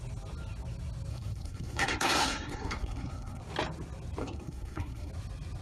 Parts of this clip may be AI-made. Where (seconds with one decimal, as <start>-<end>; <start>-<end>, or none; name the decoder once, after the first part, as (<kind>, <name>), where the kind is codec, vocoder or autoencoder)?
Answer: 1.1-3.4 (codec, SNAC); 4.2-5.1